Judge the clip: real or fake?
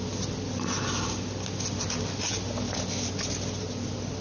real